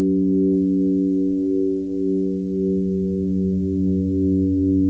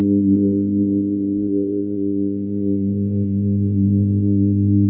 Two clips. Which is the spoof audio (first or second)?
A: second